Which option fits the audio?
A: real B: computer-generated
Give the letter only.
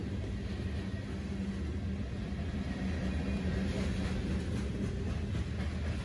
A